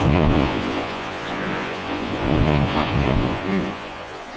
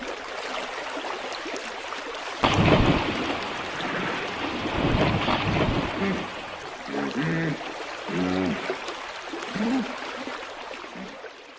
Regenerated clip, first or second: first